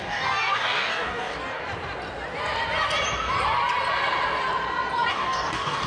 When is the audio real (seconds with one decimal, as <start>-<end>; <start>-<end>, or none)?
1.6-5.1